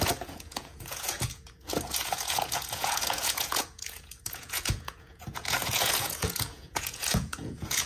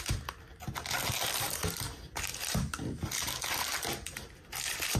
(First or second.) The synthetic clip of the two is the first